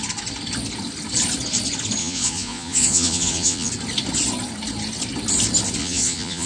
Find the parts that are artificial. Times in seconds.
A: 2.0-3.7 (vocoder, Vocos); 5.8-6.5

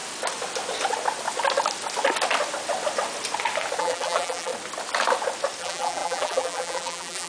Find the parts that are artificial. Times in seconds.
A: 3.8-4.5 (vocoder, BigVGAN v2); 5.6-7.3

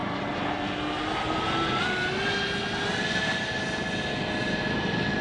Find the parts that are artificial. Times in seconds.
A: none

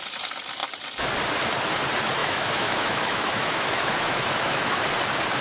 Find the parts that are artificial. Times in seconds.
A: 2.2-4.8 (autoencoder, DAC-VAE)

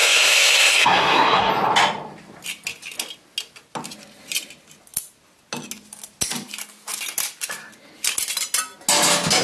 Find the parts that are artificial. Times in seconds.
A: 0.0-1.5 (codec, SNAC)

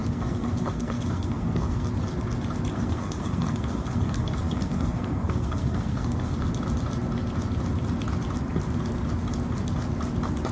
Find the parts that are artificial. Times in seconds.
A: 0.0-1.9 (codec, SNAC); 2.7-6.5

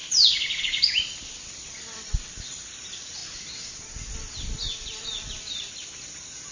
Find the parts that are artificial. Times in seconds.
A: 0.6-3.2 (vocoder, BigVGAN v2); 4.5-6.5

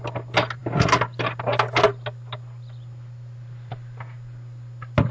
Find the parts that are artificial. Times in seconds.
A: none